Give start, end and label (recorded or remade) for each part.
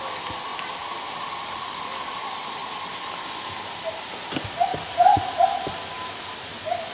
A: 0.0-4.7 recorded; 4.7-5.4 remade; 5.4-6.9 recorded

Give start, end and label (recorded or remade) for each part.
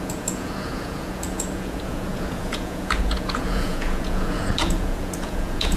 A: 0.0-5.8 remade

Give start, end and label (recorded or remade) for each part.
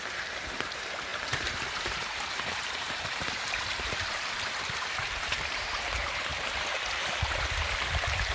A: 0.0-6.3 remade; 6.3-7.3 recorded; 7.3-8.3 remade